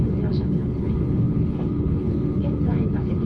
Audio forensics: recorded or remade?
remade